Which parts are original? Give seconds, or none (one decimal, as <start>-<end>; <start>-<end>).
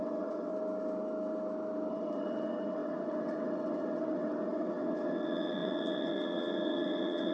0.5-1.9